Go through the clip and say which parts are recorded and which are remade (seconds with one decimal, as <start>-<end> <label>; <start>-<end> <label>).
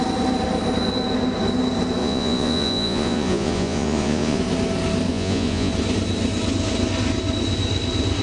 0.0-2.0 recorded; 2.0-4.4 remade; 4.4-5.1 recorded; 5.1-5.7 remade; 5.7-8.2 recorded